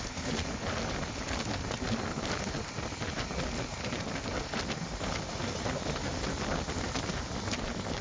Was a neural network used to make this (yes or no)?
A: no